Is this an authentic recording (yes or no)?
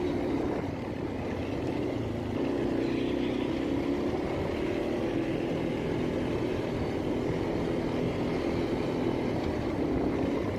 yes